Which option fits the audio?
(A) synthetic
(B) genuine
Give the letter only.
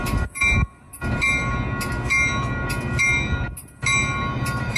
B